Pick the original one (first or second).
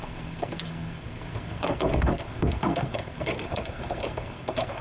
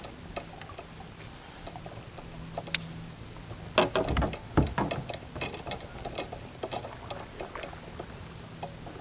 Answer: second